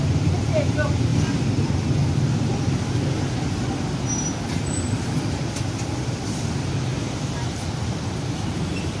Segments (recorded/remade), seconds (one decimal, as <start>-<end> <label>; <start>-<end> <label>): 0.0-6.9 recorded; 6.9-9.0 remade